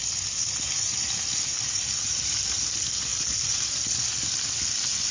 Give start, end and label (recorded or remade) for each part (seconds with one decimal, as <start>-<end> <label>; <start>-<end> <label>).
0.0-5.1 remade